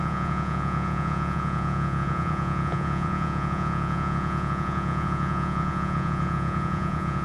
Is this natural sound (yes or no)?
no